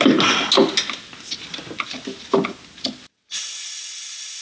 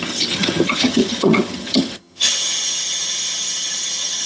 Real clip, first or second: first